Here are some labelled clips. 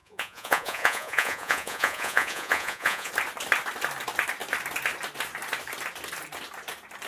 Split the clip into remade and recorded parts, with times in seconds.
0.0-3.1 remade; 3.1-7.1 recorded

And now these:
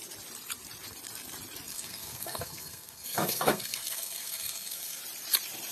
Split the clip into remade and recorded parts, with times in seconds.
0.0-1.7 recorded; 1.7-5.0 remade; 5.0-5.7 recorded